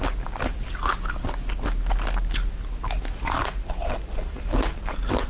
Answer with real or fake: real